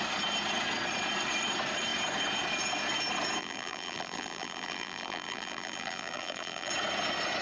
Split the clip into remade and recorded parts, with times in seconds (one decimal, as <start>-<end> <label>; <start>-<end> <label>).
0.0-3.4 recorded; 3.4-6.7 remade; 6.7-7.4 recorded